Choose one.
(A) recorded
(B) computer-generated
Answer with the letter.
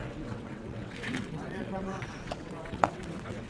B